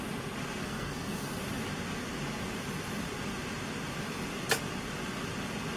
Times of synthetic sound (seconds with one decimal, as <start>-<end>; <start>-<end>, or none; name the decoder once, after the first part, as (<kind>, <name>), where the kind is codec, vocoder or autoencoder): 0.6-1.4 (codec, SNAC)